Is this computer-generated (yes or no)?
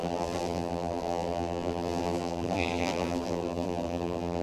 yes